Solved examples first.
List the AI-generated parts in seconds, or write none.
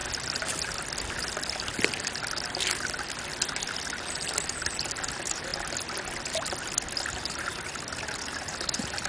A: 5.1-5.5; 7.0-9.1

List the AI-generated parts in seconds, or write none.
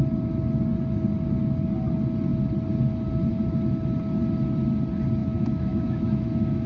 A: 5.2-6.7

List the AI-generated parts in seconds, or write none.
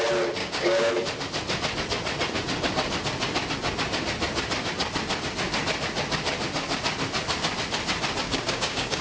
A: 0.4-0.9; 8.2-9.0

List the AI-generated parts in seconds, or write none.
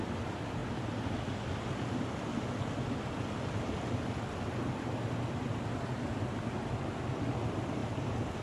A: none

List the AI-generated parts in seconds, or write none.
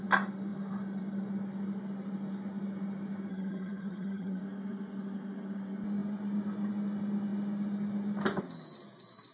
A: 3.3-4.4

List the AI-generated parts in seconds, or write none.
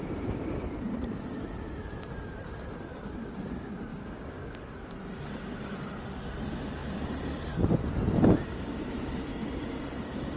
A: 3.9-4.6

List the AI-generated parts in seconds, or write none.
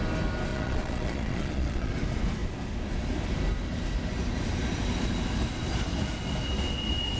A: 0.5-1.9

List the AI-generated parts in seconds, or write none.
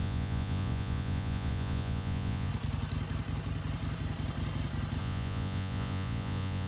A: 0.0-2.5; 5.0-6.7